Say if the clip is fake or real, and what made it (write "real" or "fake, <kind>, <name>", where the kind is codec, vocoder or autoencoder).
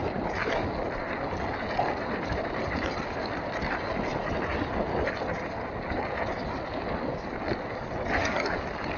real